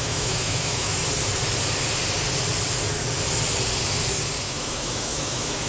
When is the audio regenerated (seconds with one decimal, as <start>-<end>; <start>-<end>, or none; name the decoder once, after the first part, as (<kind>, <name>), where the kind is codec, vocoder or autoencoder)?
0.0-1.0 (autoencoder, DAC-VAE); 4.4-5.7